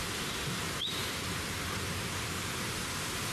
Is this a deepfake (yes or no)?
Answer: no